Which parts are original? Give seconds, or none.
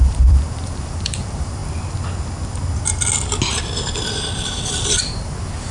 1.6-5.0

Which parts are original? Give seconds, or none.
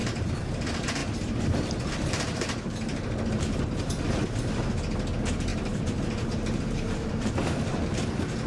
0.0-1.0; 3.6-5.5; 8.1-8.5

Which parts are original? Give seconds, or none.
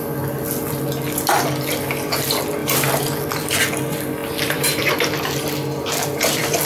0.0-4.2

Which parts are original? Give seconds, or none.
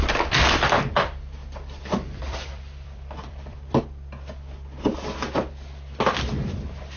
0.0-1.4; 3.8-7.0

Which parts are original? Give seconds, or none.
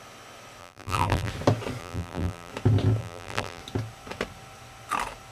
0.0-0.6; 1.3-1.8; 2.5-3.0; 3.6-5.3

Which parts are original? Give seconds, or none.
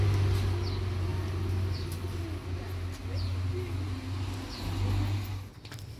0.0-6.0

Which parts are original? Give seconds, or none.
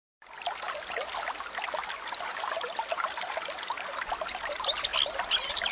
0.0-2.3; 3.7-5.7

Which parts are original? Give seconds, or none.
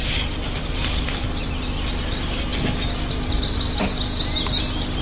1.5-5.0